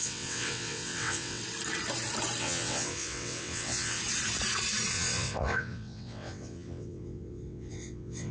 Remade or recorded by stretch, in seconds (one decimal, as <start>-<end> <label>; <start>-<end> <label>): 0.0-1.4 remade; 1.4-2.4 recorded; 2.4-4.0 remade; 4.0-4.9 recorded; 4.9-8.3 remade